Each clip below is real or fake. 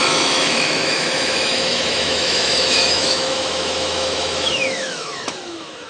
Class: fake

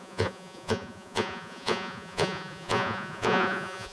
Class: fake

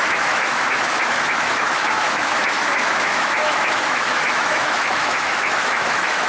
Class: fake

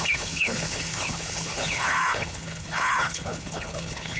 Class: fake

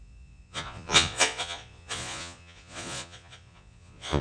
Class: fake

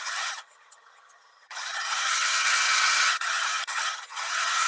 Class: fake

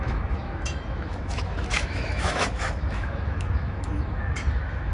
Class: fake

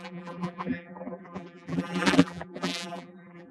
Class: fake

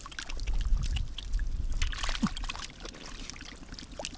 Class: real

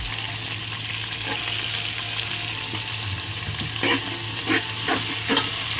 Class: real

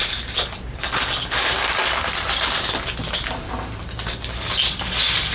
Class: real